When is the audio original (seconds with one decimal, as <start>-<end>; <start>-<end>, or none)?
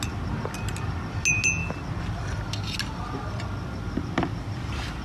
0.0-5.0